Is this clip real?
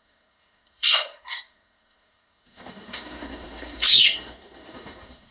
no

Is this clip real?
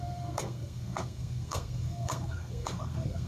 no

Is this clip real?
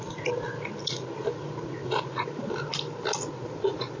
yes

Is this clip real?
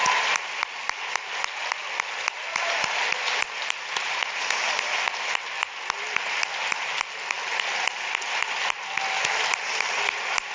yes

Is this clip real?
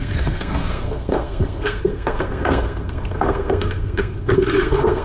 no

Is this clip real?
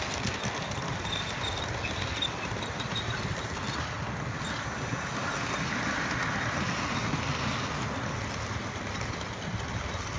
yes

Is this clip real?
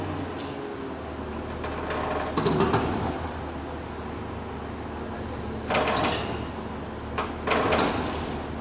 yes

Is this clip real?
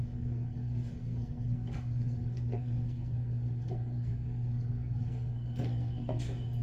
no